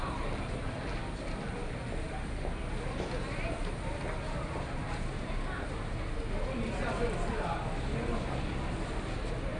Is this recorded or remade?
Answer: recorded